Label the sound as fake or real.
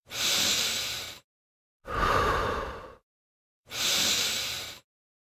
fake